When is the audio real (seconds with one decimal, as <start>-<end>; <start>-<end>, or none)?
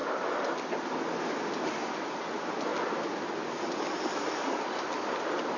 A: 0.0-5.6